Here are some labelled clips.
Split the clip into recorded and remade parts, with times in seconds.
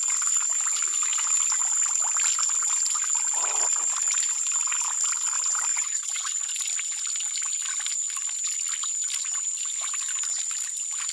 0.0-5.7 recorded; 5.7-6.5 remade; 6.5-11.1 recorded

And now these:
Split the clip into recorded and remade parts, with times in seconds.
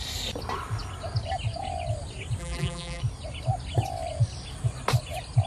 0.0-2.4 recorded; 2.4-3.0 remade; 3.0-5.5 recorded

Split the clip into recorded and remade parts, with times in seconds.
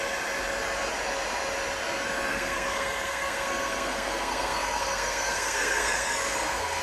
0.0-2.3 recorded; 2.3-6.8 remade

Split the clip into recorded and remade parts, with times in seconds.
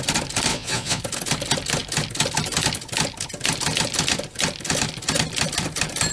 0.0-0.5 recorded; 0.5-1.0 remade; 1.0-6.1 recorded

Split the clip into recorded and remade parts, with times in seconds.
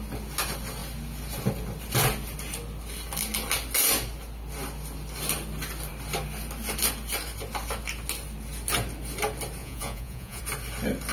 0.0-9.6 recorded; 9.6-10.4 remade; 10.4-11.1 recorded